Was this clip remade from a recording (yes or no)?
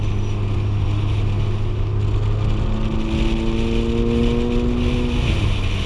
no